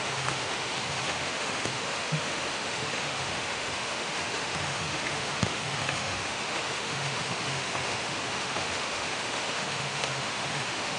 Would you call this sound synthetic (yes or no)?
yes